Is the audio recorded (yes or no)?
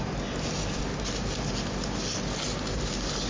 yes